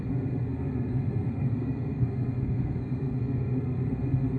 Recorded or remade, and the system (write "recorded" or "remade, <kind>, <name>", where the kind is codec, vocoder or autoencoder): remade, codec, SNAC